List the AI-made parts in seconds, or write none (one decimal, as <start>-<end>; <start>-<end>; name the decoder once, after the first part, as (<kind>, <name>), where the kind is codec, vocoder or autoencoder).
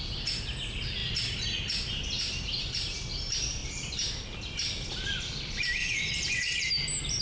5.8-6.7 (vocoder, WaveNeXt)